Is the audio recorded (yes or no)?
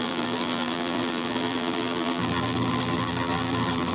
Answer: no